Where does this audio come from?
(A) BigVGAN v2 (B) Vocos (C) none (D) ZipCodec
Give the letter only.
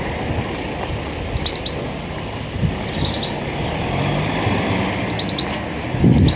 C